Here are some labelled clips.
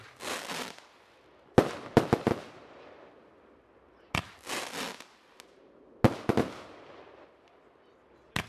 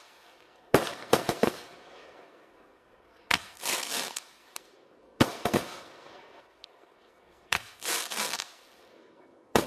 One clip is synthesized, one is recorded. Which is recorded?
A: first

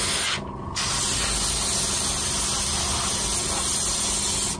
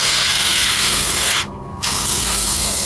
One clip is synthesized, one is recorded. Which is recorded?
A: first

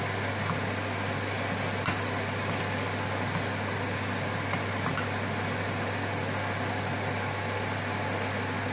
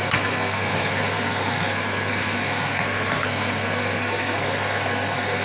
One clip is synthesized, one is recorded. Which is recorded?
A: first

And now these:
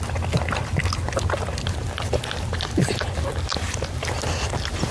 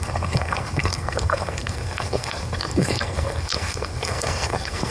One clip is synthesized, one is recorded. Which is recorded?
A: first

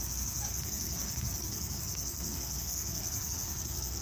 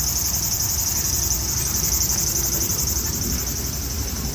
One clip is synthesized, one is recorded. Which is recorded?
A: second